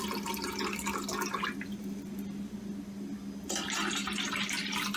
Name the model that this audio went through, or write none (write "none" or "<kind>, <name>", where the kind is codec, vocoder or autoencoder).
none